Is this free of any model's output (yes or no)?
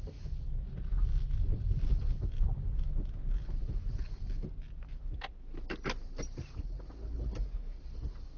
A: yes